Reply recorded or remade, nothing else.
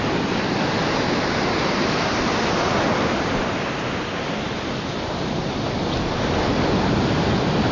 recorded